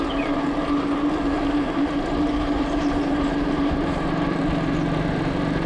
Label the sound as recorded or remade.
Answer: remade